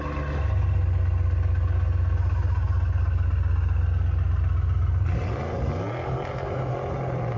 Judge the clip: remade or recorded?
recorded